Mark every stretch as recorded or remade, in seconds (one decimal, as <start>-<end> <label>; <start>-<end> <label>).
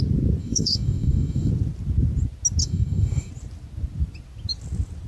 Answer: 0.0-0.4 recorded; 0.4-1.5 remade; 1.5-2.6 recorded; 2.6-3.3 remade; 3.3-5.1 recorded